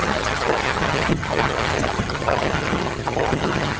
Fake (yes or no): yes